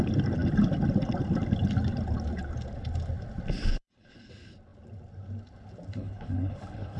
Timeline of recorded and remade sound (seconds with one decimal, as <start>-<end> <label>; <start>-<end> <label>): 0.0-3.7 recorded; 3.7-4.3 remade; 4.3-5.9 recorded; 5.9-7.0 remade